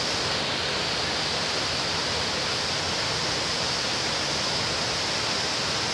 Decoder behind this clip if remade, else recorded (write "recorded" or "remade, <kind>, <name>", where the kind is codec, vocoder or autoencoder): recorded